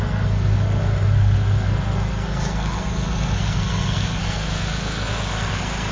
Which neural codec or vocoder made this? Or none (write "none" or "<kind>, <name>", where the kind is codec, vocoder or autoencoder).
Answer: codec, SNAC